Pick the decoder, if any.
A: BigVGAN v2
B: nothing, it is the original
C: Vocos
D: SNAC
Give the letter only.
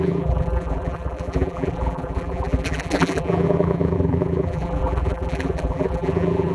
A